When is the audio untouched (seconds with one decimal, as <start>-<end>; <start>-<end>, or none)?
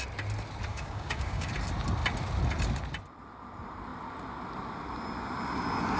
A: 0.0-0.7; 1.5-6.0